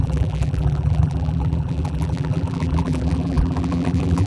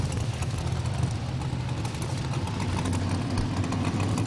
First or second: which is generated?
first